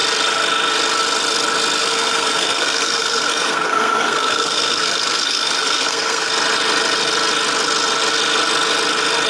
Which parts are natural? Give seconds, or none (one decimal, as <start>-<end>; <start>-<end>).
0.0-1.8; 6.3-9.3